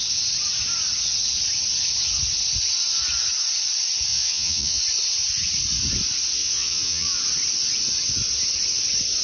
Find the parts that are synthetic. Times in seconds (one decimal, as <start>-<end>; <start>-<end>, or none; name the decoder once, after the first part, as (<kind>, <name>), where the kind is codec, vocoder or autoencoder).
4.1-4.8 (vocoder, Vocos); 6.4-7.2